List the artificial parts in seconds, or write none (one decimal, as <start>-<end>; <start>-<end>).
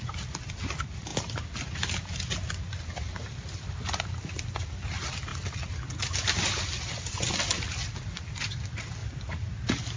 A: none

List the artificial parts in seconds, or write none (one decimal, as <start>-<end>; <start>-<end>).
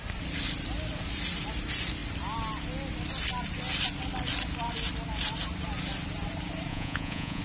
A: 6.7-7.4